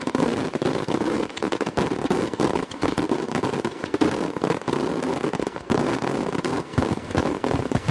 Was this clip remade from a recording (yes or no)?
yes